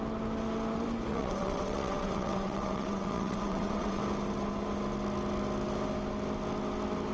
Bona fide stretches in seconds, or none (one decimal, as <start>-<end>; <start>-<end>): 0.0-1.1; 4.0-7.1